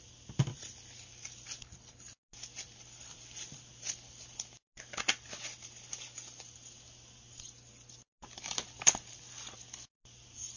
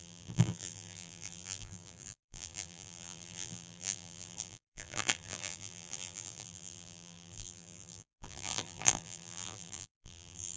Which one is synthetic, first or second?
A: second